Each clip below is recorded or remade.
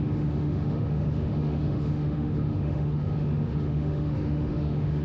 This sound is remade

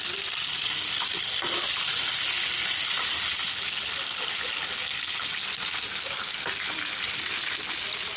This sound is recorded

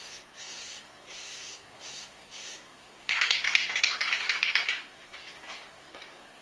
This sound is remade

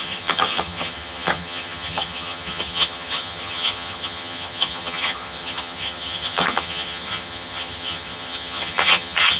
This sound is remade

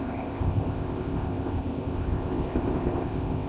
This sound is remade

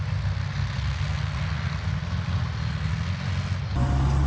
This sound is recorded